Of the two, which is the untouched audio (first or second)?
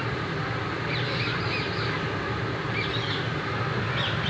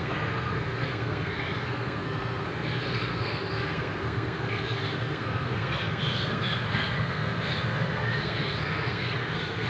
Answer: first